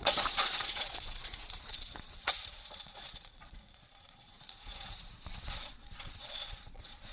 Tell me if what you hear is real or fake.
fake